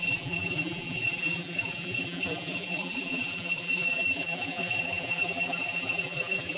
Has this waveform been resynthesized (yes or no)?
yes